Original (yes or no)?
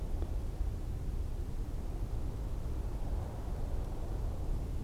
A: yes